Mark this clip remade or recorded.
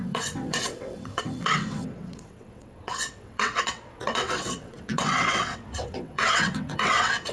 remade